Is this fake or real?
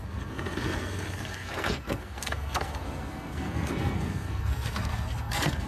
fake